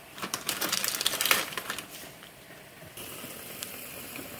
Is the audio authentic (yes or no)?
no